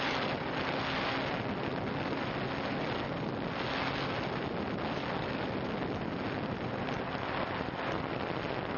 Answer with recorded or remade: recorded